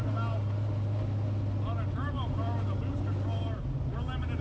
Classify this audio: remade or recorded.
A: recorded